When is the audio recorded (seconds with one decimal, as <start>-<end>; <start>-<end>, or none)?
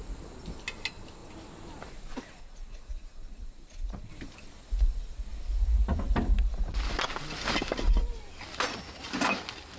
0.0-2.4; 4.1-9.8